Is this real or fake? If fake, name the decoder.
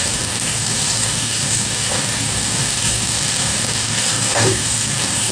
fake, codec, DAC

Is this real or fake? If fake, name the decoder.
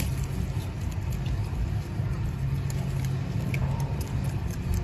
real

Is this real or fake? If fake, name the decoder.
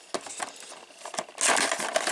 real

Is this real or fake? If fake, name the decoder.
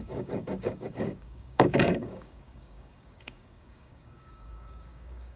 fake, codec, DAC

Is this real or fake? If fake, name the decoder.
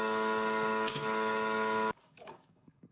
fake, codec, DAC